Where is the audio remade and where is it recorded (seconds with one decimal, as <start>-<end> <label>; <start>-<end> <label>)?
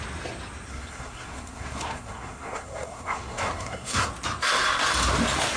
0.0-0.7 recorded; 0.7-4.1 remade; 4.1-5.6 recorded